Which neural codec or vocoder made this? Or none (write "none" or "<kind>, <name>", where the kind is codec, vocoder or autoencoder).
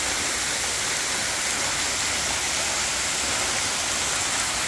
none